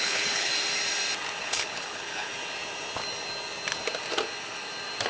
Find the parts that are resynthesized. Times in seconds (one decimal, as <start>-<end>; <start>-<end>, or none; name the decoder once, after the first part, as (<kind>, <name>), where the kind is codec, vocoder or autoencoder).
0.0-0.5 (codec, HILCodec); 1.4-2.3